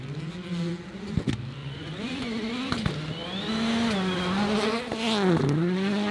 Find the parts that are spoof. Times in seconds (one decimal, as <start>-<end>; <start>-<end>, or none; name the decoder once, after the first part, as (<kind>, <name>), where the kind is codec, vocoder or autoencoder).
1.6-2.5 (vocoder, Vocos)